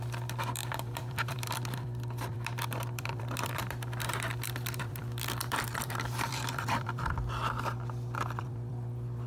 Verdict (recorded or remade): remade